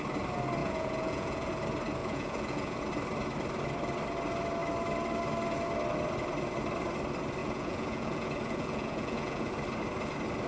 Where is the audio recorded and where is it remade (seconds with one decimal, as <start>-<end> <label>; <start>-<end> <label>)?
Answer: 0.0-0.6 recorded; 0.6-1.5 remade; 1.5-2.0 recorded; 2.0-2.9 remade; 2.9-7.4 recorded; 7.4-9.5 remade; 9.5-10.5 recorded